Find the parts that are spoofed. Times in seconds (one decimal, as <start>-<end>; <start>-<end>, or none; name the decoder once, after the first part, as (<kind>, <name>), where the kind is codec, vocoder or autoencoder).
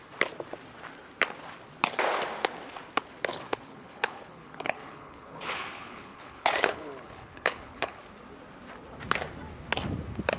3.3-8.0 (codec, HILCodec)